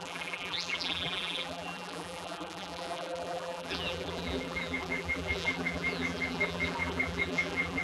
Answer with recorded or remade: remade